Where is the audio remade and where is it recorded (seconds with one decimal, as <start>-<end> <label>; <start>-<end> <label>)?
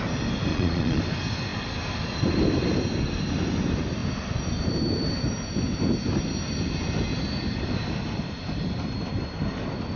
0.0-0.5 recorded; 0.5-1.0 remade; 1.0-10.0 recorded